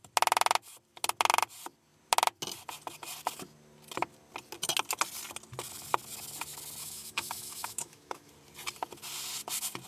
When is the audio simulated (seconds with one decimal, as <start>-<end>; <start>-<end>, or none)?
6.8-8.3